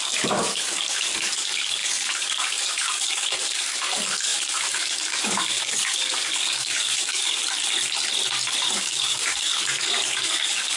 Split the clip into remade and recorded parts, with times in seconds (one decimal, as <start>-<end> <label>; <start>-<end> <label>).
0.0-7.4 remade; 7.4-8.6 recorded; 8.6-10.8 remade